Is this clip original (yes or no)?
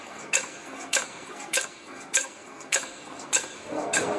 no